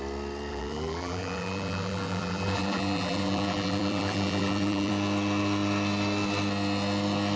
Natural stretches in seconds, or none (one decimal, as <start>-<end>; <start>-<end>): 0.0-0.5; 4.9-7.4